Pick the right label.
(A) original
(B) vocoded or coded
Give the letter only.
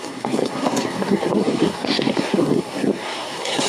B